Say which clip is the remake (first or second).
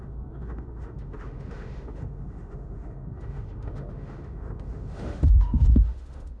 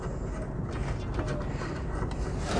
first